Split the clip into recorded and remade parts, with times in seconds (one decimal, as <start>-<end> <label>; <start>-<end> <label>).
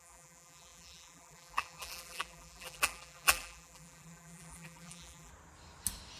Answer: 0.0-5.3 remade; 5.3-6.2 recorded